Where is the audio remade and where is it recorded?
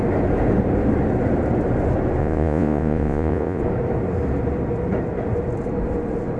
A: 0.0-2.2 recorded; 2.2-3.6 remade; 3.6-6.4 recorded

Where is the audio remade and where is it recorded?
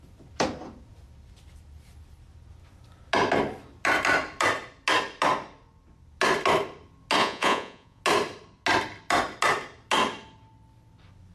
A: 0.0-7.2 recorded; 7.2-8.0 remade; 8.0-11.3 recorded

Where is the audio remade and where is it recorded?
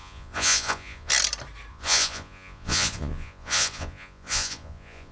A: 0.0-1.1 remade; 1.1-1.7 recorded; 1.7-5.1 remade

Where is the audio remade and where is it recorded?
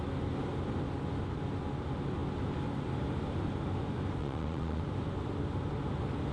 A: 0.0-4.2 recorded; 4.2-4.8 remade; 4.8-6.3 recorded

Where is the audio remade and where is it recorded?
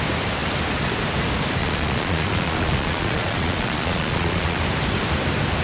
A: 0.0-1.6 recorded; 1.6-4.6 remade; 4.6-5.6 recorded